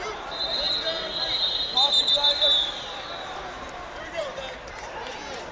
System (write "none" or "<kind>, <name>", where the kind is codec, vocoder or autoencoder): vocoder, BigVGAN v2